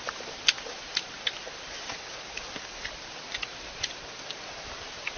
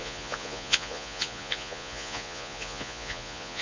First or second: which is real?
first